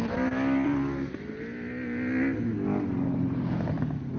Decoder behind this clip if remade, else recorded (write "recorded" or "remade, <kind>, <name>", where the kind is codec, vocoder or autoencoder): recorded